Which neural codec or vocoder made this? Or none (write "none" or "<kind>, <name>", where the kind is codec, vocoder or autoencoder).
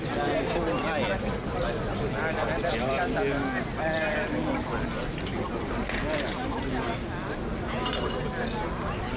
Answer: none